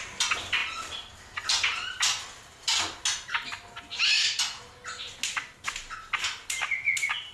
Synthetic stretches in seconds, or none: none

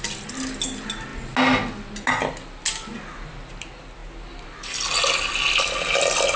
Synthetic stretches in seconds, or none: none

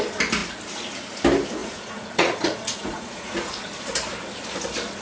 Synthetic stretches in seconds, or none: 1.6-3.5 (vocoder, Vocos)

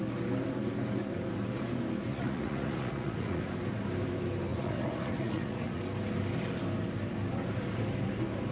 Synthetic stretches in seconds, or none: 2.1-3.5 (vocoder, Vocos); 4.5-5.8

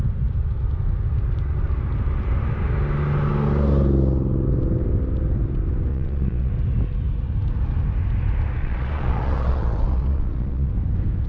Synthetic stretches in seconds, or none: 5.9-6.5 (vocoder, Vocos); 8.6-10.7

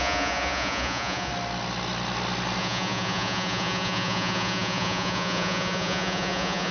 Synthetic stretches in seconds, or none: 0.0-1.3 (vocoder, Vocos); 2.6-6.7